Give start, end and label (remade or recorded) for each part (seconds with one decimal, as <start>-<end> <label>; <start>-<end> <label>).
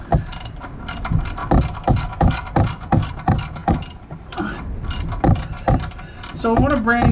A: 0.0-7.1 recorded